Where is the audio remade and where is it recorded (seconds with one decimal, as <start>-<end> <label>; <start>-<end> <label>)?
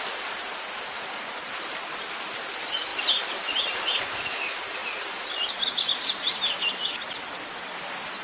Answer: 0.0-2.9 recorded; 2.9-4.0 remade; 4.0-8.2 recorded